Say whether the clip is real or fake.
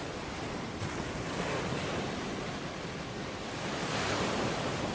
real